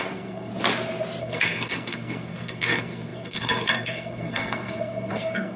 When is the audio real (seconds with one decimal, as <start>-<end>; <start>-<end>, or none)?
0.5-1.2